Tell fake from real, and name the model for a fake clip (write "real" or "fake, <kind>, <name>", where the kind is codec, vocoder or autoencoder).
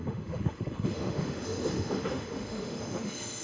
fake, autoencoder, DAC-VAE